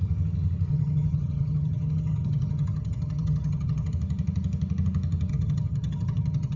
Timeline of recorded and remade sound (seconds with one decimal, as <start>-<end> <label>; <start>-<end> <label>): 0.0-0.7 recorded; 0.7-3.9 remade; 3.9-5.3 recorded; 5.3-6.6 remade